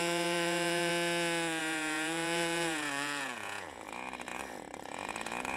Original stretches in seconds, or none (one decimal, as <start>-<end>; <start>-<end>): 0.9-1.6